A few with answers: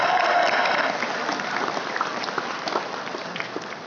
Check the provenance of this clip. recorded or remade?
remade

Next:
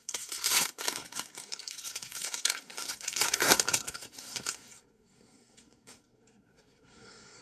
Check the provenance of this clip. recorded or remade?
remade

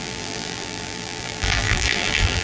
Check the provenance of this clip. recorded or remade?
remade